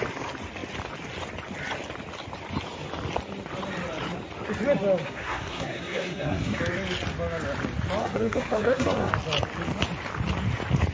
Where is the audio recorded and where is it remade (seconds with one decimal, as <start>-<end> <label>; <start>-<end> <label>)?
0.0-5.0 recorded; 5.0-6.6 remade; 6.6-8.0 recorded; 8.0-9.1 remade; 9.1-10.9 recorded